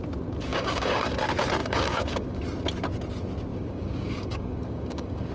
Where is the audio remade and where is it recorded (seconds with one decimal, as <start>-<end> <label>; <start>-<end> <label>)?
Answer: 0.0-0.5 recorded; 0.5-1.1 remade; 1.1-1.6 recorded; 1.6-2.4 remade; 2.4-3.5 recorded; 3.5-5.3 remade